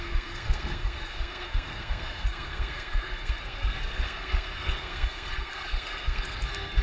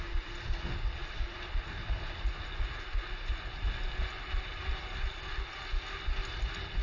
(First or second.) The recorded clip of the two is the second